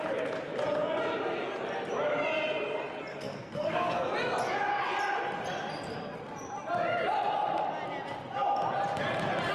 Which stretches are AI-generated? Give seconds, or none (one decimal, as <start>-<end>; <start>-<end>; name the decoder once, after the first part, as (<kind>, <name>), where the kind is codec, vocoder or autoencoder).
3.1-4.1 (codec, SNAC)